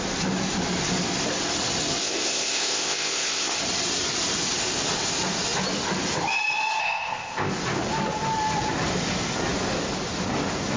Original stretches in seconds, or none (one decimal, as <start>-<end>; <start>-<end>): 0.0-2.0; 3.6-6.8; 7.5-10.8